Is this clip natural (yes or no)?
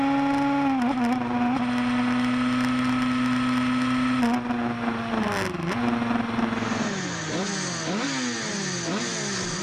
yes